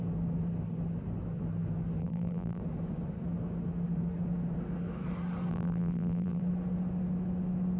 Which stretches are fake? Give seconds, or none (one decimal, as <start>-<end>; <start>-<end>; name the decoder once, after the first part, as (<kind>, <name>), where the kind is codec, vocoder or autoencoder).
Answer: 2.0-2.6 (vocoder, BigVGAN v2); 5.5-6.4